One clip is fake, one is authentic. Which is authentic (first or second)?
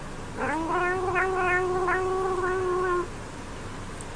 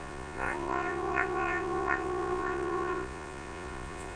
first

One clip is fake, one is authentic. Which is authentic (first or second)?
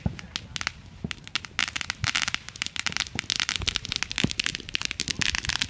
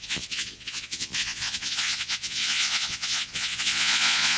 first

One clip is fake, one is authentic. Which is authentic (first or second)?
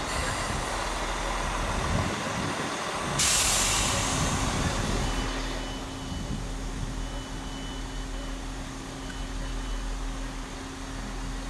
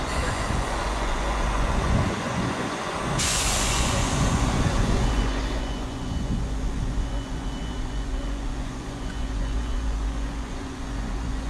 first